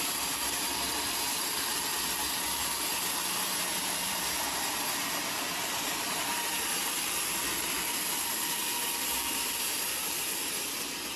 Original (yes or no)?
no